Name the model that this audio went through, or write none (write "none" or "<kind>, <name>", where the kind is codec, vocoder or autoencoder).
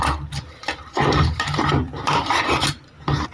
vocoder, BigVGAN v2